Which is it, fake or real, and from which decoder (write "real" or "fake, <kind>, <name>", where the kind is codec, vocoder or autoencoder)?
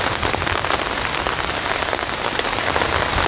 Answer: real